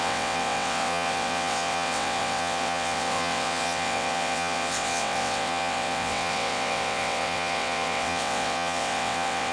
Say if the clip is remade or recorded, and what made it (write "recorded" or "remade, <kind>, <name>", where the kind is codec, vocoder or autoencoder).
remade, vocoder, WaveNeXt